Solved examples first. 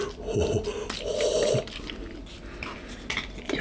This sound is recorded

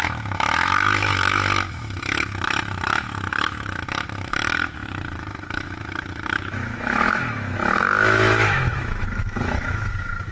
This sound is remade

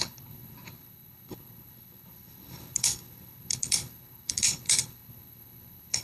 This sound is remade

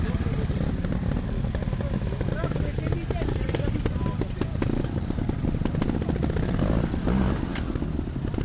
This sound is recorded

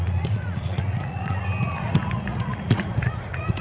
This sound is remade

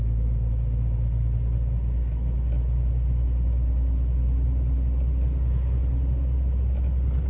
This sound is recorded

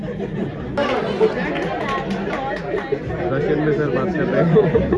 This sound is recorded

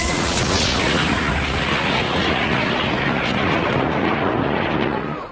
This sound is remade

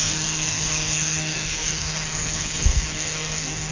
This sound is remade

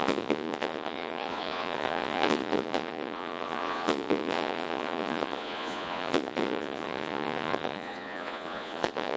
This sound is remade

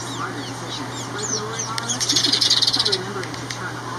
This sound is recorded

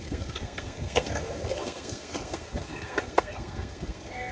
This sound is remade